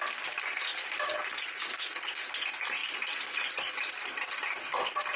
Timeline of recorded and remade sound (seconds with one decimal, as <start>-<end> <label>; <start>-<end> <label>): 0.0-5.2 recorded